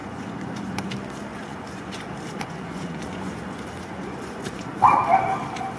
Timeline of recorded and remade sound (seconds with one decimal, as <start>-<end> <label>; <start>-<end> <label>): 0.0-0.9 remade; 0.9-1.3 recorded; 1.3-4.8 remade; 4.8-5.8 recorded